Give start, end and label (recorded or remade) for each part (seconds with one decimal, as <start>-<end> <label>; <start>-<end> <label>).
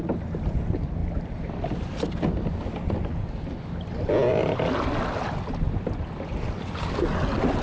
0.0-7.6 recorded